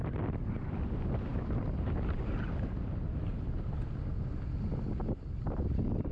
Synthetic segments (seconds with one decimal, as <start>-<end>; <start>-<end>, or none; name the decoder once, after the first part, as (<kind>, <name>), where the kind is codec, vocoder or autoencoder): none